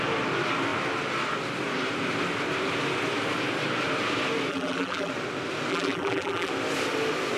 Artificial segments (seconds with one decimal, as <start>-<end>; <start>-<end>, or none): 4.5-5.1; 5.7-6.5